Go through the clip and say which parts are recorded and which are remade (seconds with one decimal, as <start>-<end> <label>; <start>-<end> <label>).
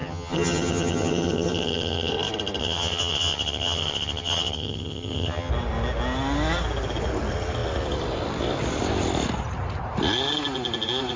0.0-2.1 remade; 2.1-2.6 recorded; 2.6-5.5 remade; 5.5-11.2 recorded